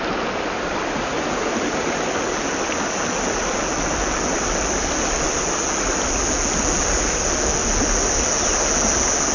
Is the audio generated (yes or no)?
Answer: no